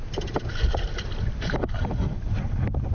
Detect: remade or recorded recorded